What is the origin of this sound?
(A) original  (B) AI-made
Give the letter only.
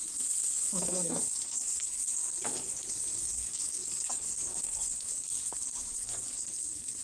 B